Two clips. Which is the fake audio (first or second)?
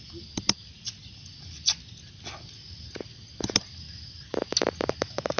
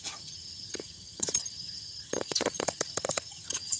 second